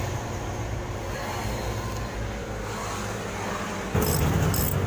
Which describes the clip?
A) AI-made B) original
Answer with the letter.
B